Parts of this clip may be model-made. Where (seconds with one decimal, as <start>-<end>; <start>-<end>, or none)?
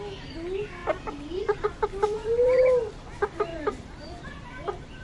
0.8-2.6; 3.5-5.0